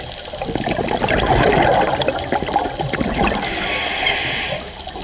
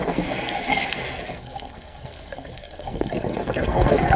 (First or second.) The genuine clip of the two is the first